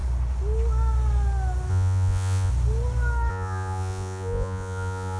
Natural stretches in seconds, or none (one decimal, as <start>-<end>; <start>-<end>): 0.0-1.7; 2.5-3.3